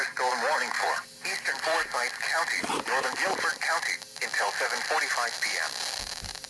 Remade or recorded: recorded